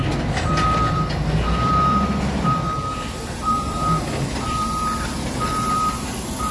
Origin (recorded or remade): remade